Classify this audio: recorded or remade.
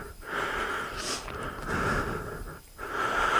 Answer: recorded